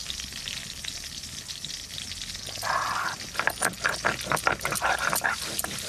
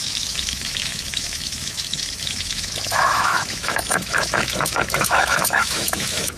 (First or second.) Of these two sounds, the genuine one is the first